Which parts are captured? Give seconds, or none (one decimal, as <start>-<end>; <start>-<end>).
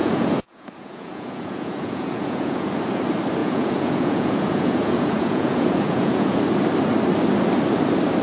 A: 2.7-3.4; 6.4-8.2